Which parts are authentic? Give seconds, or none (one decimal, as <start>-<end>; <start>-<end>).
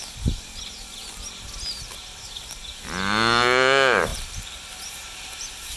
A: 0.0-4.1